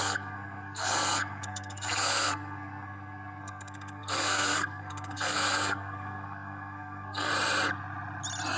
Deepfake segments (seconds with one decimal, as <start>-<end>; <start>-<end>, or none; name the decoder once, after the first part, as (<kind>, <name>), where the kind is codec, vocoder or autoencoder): 0.0-7.3 (codec, SNAC)